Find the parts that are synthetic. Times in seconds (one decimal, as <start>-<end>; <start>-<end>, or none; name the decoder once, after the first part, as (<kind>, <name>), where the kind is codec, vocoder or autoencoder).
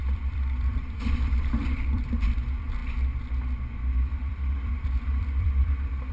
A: 0.0-2.8 (vocoder, BigVGAN v2); 3.7-6.1